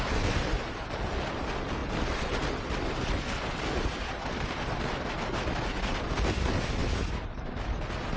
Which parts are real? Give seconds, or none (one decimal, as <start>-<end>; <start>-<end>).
0.0-8.2